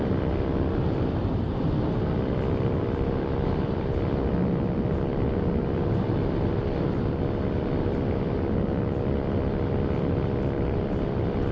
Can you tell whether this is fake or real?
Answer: real